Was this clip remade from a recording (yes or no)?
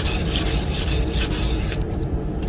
no